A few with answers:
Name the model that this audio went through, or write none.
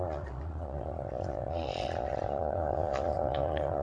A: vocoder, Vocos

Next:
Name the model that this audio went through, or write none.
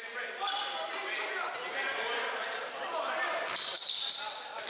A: vocoder, BigVGAN v2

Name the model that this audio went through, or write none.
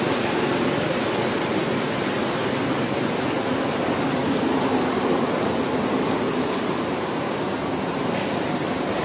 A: none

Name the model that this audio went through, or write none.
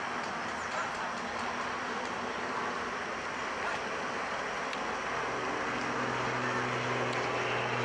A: none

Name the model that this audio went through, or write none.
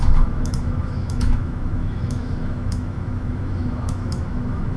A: autoencoder, DAC-VAE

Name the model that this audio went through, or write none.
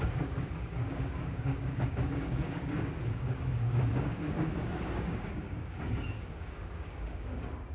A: codec, DAC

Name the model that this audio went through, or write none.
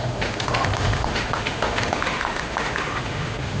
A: autoencoder, DAC-VAE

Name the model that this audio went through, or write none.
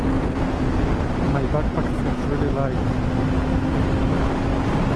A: none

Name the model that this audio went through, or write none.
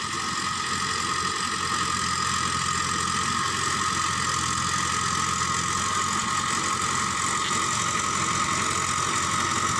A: none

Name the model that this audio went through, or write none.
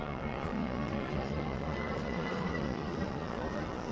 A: vocoder, Vocos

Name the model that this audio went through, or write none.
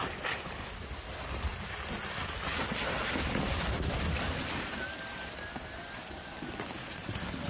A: none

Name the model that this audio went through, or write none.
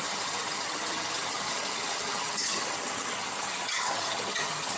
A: vocoder, HiFi-GAN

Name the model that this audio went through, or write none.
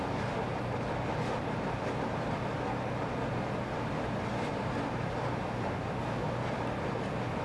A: none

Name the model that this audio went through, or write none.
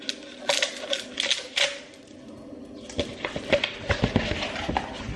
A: none